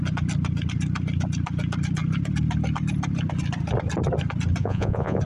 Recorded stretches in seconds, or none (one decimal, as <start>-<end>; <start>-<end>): 0.0-4.6